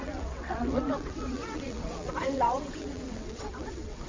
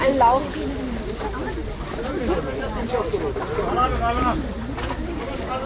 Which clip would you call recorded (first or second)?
second